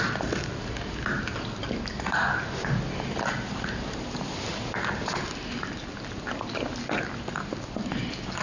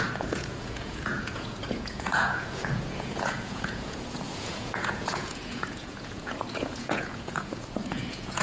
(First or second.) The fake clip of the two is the second